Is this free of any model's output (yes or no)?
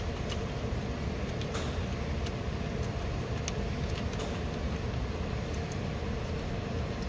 yes